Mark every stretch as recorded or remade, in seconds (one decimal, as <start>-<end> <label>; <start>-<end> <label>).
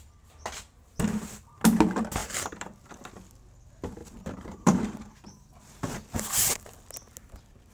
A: 0.0-2.2 recorded; 2.2-3.1 remade; 3.1-4.0 recorded; 4.0-5.5 remade; 5.5-7.7 recorded